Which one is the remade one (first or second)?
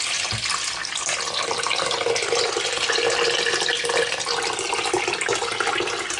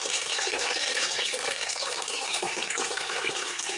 second